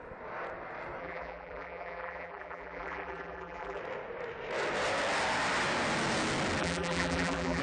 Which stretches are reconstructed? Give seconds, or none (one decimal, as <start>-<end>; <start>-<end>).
1.0-3.8; 6.6-7.6